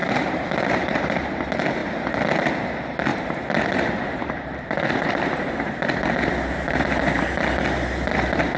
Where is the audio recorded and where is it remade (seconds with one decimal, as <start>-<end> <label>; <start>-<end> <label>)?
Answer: 0.0-1.2 remade; 1.2-3.1 recorded; 3.1-7.2 remade; 7.2-8.6 recorded